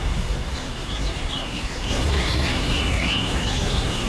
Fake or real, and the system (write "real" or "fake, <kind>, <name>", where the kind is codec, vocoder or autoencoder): fake, codec, SNAC